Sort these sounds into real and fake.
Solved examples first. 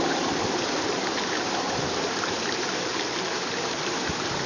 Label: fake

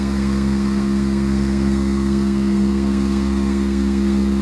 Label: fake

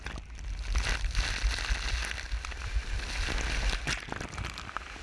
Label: real